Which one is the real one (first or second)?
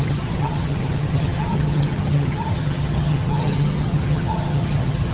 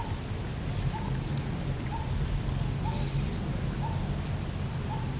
second